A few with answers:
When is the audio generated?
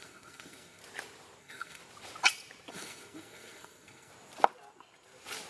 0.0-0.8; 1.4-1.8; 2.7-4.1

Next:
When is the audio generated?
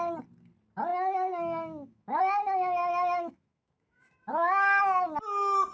0.9-2.2; 2.8-4.8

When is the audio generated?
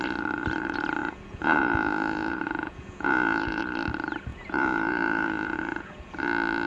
1.0-3.6; 4.3-6.1